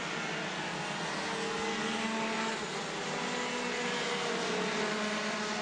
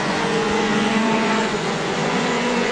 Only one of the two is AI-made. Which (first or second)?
second